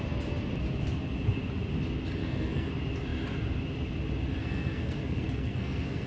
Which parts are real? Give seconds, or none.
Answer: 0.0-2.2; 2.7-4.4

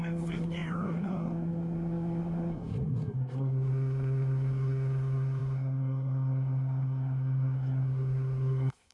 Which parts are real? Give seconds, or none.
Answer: none

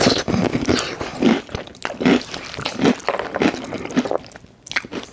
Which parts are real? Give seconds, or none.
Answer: 0.0-5.1

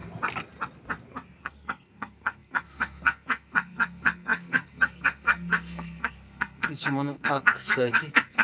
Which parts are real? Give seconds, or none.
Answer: 0.0-1.4

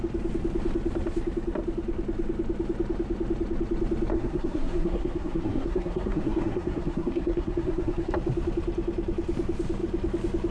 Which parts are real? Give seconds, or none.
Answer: 0.0-4.1; 8.1-10.5